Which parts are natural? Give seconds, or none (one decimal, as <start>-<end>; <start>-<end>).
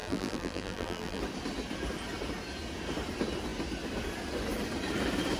1.2-5.4